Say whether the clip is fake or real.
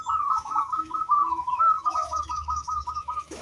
fake